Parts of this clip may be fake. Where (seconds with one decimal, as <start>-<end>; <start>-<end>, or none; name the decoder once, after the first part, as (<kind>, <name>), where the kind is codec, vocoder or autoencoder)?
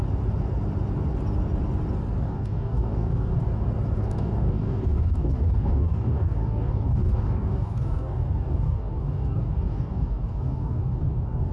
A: 2.2-3.3 (codec, DAC); 4.0-11.5